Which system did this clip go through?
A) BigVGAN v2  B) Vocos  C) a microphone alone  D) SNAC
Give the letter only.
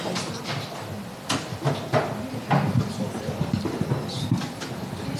C